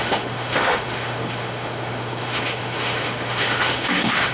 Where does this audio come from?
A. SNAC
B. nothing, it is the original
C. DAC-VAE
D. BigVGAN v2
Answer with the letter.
C